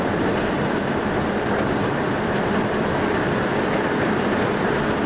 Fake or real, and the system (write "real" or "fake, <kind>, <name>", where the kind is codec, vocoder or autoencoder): real